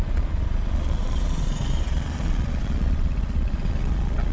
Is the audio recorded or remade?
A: remade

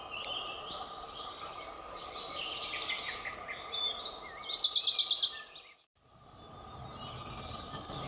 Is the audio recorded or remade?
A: recorded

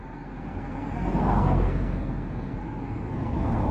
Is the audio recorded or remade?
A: remade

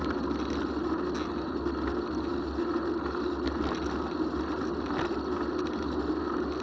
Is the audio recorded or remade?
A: recorded